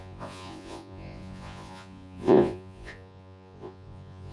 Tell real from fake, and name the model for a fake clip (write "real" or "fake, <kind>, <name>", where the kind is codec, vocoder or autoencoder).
fake, vocoder, Vocos